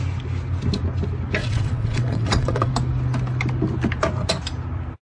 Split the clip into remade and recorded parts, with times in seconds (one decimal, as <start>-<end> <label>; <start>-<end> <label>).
0.0-1.4 recorded; 1.4-2.7 remade; 2.7-5.2 recorded